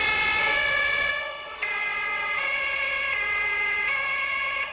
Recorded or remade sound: remade